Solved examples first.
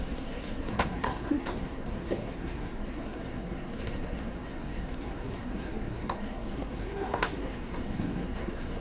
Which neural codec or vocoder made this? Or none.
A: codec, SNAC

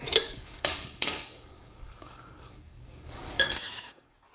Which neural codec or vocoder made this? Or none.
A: codec, DAC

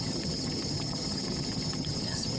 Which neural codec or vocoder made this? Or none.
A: vocoder, HiFi-GAN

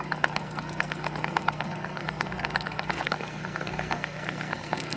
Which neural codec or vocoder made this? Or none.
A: codec, SNAC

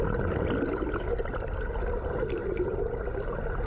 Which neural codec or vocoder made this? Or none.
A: none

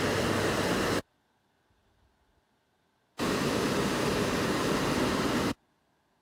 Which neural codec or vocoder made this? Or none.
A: none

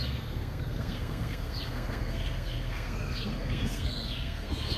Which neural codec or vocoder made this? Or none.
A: codec, SNAC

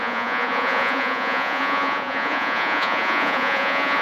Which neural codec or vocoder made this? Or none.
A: vocoder, Vocos